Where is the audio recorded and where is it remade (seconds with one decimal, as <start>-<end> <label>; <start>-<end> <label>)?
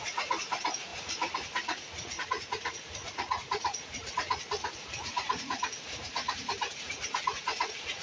0.0-8.0 remade